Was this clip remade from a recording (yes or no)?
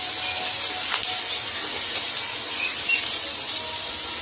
no